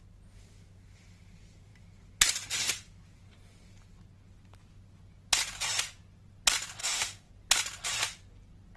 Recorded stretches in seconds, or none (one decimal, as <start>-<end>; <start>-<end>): 0.0-6.8; 7.3-8.8